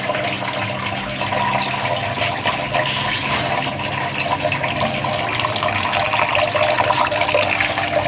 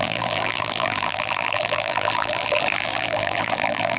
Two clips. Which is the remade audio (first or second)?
second